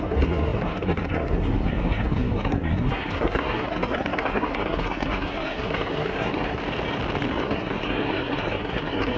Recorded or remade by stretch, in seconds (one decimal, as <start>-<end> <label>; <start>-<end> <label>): 0.0-6.6 remade; 6.6-7.3 recorded; 7.3-9.2 remade